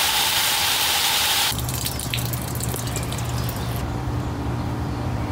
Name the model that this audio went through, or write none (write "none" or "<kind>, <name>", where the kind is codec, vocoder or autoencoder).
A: vocoder, BigVGAN v2